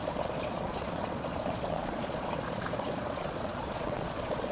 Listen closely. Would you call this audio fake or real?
fake